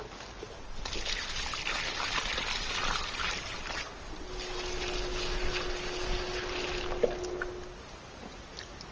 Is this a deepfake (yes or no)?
no